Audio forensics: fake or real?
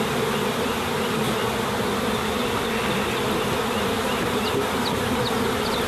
real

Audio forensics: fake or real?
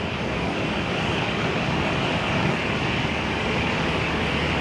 fake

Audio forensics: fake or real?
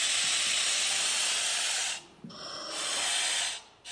real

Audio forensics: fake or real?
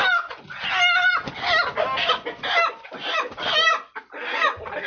real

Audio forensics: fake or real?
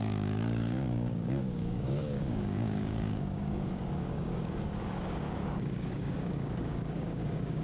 fake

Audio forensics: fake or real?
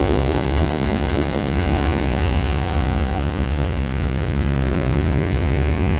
fake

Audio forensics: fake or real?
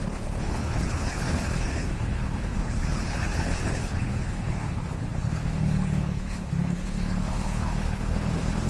fake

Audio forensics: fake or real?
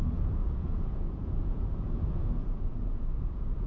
fake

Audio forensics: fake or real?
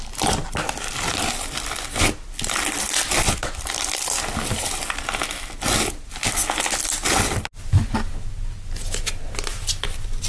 real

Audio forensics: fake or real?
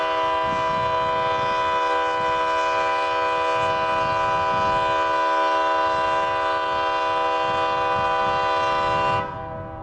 real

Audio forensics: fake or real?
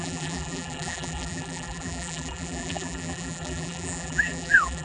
fake